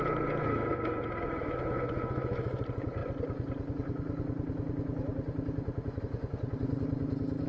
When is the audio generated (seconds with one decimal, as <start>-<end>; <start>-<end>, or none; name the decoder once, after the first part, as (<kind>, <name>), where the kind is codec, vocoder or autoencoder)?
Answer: 0.4-2.6 (autoencoder, DAC-VAE)